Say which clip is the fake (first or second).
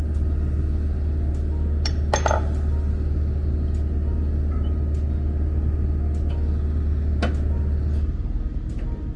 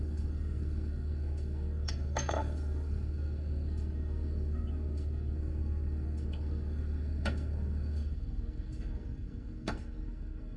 second